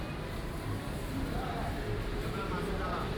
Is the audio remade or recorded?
remade